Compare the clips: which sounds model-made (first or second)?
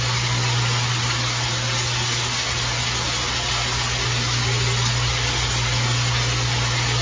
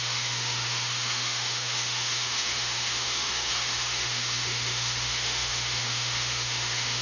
second